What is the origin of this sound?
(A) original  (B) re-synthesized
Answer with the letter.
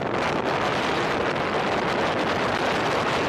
A